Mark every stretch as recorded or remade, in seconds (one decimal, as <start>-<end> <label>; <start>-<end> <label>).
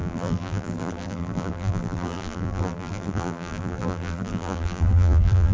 0.0-5.5 remade